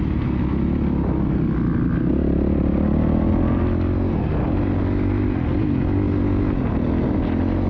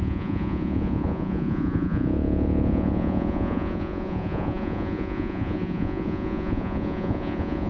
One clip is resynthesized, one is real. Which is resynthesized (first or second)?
second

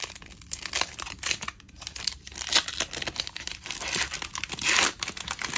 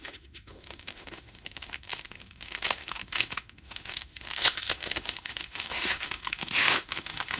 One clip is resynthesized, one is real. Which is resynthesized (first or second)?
second